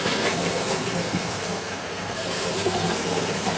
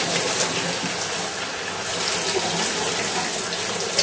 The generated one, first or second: first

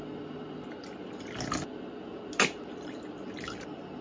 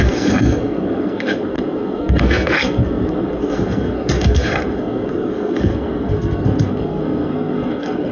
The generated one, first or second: second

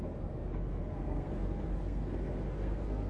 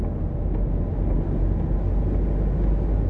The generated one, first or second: first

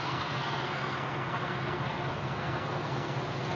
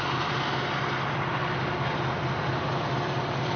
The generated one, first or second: first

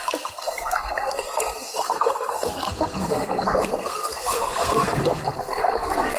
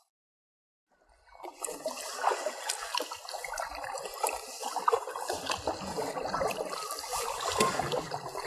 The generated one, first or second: first